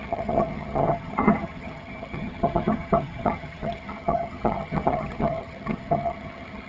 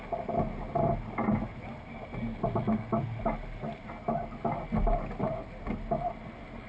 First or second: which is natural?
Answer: second